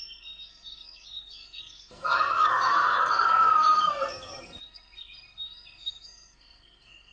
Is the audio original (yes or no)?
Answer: no